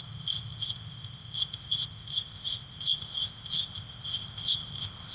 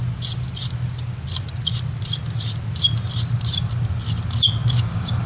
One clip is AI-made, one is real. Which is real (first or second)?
second